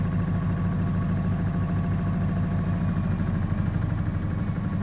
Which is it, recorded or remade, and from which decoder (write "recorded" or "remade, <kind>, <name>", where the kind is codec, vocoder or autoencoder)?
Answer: recorded